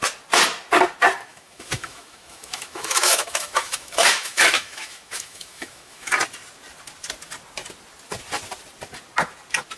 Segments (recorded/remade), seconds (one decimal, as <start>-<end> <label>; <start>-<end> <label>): 0.0-1.3 recorded; 1.3-6.1 remade; 6.1-9.8 recorded